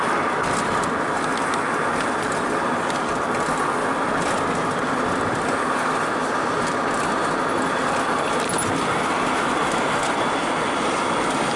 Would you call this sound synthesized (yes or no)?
no